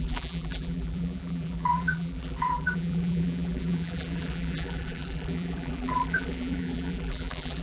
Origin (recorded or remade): remade